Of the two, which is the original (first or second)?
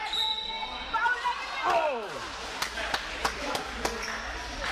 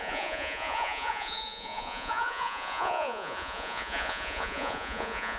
first